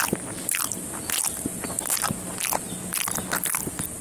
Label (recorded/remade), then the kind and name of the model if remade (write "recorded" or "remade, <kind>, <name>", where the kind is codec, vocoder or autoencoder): recorded